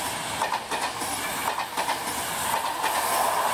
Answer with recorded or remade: recorded